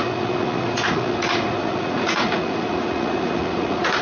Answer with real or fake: fake